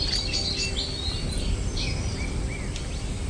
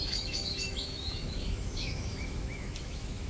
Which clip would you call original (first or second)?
first